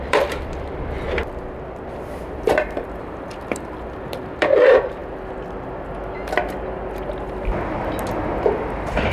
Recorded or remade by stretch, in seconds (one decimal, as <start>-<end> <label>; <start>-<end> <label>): 0.0-1.2 remade; 1.2-1.9 recorded; 1.9-5.0 remade; 5.0-8.5 recorded; 8.5-9.1 remade